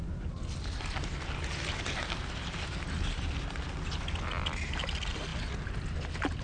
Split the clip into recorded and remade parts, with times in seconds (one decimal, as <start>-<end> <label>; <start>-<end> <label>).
0.0-6.4 recorded